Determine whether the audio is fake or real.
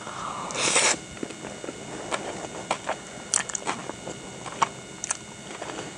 fake